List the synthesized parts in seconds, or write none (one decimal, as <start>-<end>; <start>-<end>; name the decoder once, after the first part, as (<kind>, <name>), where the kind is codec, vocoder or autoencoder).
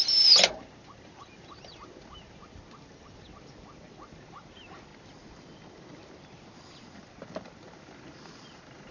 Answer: none